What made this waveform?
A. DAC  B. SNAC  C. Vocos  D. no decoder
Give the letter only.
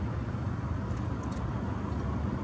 D